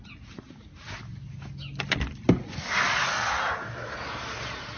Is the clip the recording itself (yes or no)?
yes